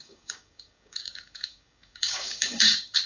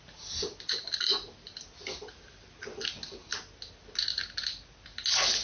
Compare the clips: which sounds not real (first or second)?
first